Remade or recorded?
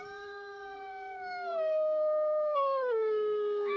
remade